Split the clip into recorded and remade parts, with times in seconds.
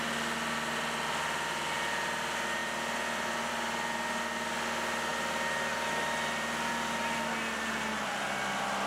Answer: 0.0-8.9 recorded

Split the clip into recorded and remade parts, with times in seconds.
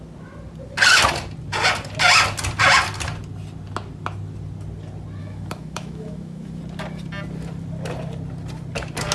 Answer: 0.0-5.2 recorded; 5.2-6.6 remade; 6.6-9.1 recorded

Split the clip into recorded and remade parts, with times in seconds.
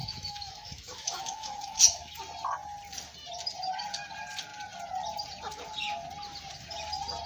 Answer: 0.0-2.2 remade; 2.2-7.3 recorded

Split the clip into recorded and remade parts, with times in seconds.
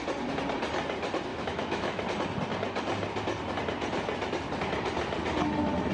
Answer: 0.0-1.3 recorded; 1.3-2.0 remade; 2.0-5.9 recorded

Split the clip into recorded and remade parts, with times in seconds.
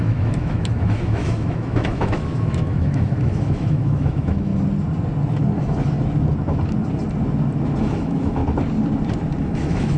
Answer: 0.0-4.5 remade; 4.5-7.8 recorded; 7.8-8.4 remade; 8.4-9.4 recorded; 9.4-10.0 remade